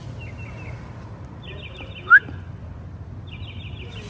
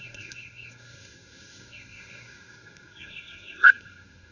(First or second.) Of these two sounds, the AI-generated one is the second